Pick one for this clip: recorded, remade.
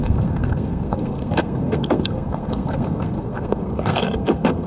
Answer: remade